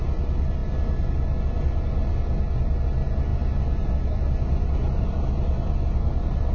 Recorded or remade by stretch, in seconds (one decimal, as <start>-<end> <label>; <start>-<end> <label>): 0.0-6.5 recorded